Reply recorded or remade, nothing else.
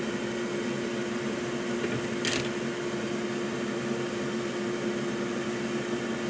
recorded